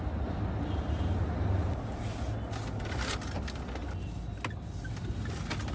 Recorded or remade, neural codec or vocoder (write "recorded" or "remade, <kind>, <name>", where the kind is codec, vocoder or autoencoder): recorded